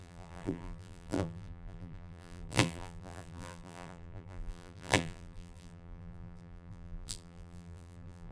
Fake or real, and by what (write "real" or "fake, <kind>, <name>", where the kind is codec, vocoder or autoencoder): fake, vocoder, BigVGAN v2